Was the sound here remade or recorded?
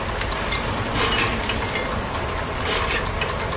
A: recorded